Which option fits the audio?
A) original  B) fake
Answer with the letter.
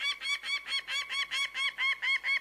A